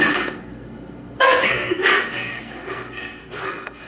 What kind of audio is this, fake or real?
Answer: fake